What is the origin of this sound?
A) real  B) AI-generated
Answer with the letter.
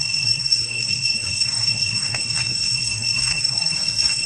B